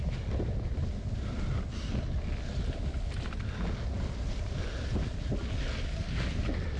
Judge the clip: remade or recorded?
recorded